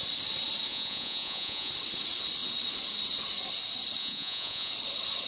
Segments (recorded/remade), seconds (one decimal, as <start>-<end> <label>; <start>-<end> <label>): 0.0-0.7 recorded; 0.7-1.7 remade; 1.7-4.0 recorded; 4.0-4.7 remade; 4.7-5.3 recorded